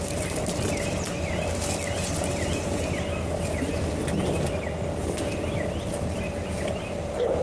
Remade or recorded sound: recorded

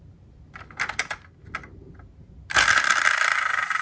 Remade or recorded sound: recorded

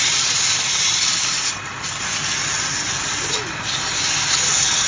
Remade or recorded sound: recorded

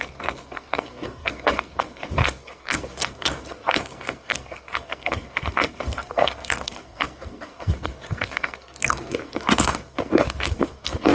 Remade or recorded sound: remade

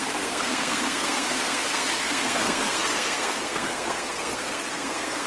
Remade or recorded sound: remade